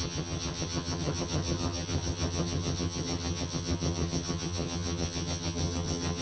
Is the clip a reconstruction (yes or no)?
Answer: yes